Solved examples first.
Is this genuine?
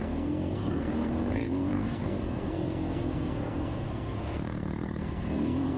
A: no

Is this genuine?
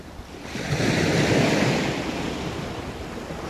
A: yes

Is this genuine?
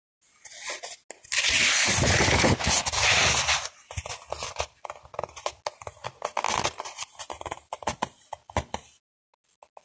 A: yes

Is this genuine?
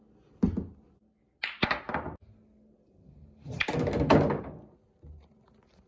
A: yes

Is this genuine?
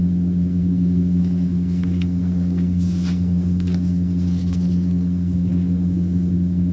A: no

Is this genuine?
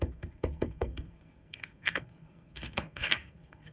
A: no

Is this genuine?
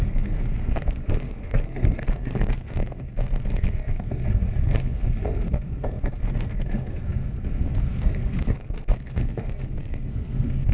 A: no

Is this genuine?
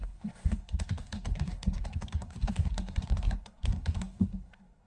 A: no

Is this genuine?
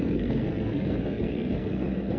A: no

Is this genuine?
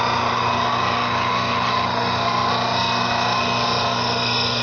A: yes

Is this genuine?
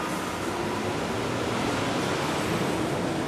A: yes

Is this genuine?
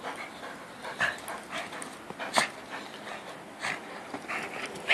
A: yes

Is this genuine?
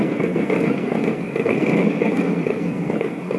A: no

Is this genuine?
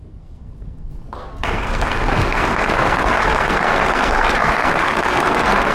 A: no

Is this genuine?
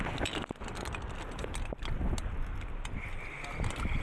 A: yes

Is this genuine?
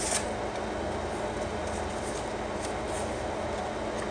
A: yes